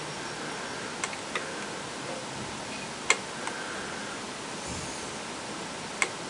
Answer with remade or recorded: recorded